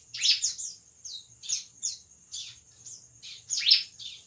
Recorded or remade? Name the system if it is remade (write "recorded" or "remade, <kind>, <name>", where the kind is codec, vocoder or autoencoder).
recorded